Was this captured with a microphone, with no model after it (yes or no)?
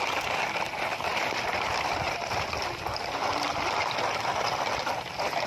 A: yes